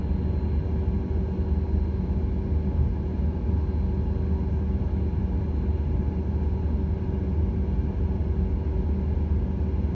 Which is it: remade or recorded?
recorded